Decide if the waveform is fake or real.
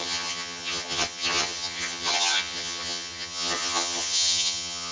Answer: fake